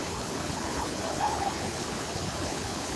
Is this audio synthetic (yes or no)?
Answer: yes